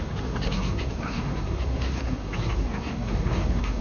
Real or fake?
fake